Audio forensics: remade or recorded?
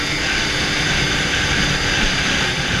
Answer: recorded